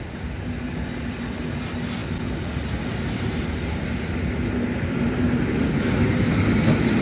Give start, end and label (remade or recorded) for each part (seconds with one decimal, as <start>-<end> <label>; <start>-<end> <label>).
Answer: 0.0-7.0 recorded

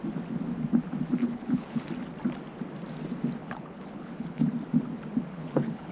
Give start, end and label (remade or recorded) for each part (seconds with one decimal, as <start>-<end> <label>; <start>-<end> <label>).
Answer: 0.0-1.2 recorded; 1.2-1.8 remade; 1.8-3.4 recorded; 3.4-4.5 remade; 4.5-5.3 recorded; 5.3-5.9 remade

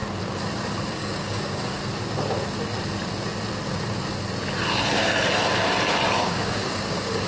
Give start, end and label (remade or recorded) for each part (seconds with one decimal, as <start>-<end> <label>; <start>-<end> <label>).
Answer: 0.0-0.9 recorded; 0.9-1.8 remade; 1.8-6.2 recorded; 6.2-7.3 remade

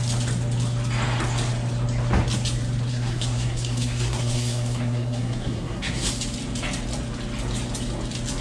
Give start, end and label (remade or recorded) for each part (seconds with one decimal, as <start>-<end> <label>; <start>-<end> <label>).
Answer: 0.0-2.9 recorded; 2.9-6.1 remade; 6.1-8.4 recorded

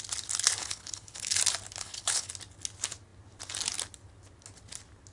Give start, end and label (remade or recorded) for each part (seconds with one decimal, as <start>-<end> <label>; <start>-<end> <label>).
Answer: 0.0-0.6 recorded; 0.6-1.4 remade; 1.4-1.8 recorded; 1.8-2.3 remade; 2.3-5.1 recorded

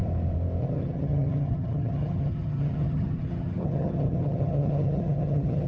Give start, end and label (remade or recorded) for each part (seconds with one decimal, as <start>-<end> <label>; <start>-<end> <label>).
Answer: 0.0-0.6 recorded; 0.6-5.7 remade

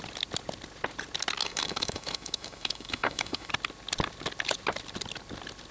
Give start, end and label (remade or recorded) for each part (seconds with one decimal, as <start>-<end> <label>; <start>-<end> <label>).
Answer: 0.0-1.4 recorded; 1.4-3.5 remade; 3.5-5.7 recorded

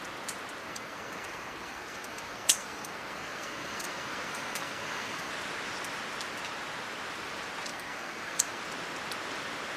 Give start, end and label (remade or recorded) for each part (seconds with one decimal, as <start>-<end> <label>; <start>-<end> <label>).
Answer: 0.0-0.6 recorded; 0.6-5.3 remade; 5.3-7.7 recorded; 7.7-8.6 remade; 8.6-9.8 recorded